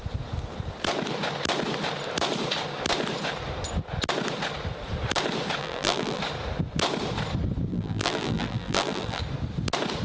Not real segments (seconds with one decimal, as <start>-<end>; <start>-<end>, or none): 5.6-6.2; 7.7-9.2